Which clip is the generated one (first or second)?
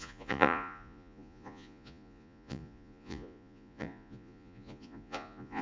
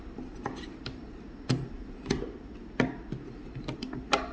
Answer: first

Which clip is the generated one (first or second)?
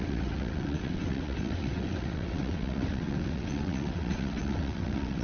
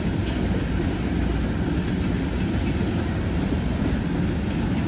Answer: first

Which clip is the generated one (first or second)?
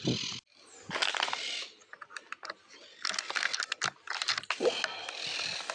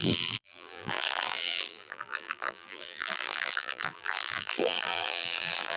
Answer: second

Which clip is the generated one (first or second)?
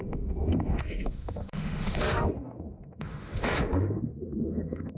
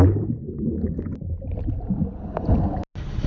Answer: first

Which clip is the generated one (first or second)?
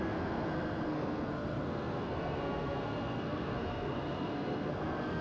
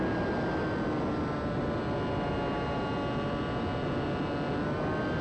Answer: first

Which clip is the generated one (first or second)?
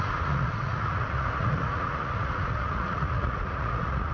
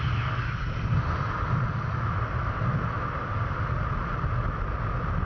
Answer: first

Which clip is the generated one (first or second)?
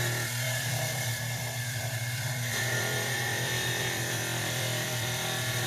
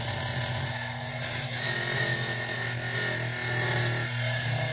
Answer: first